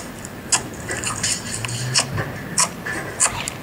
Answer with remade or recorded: recorded